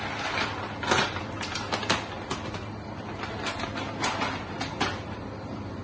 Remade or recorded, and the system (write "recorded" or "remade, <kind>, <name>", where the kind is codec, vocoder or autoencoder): recorded